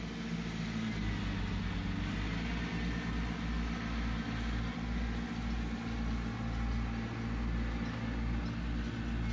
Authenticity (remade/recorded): recorded